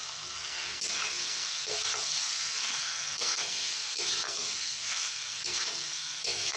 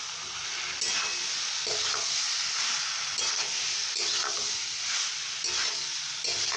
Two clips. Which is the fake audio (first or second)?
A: first